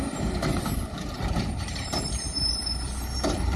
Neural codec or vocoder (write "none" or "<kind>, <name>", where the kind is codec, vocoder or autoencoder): vocoder, BigVGAN v2